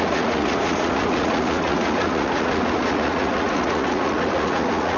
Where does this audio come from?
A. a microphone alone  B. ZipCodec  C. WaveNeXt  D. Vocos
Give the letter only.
D